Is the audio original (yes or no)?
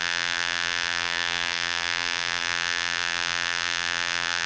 no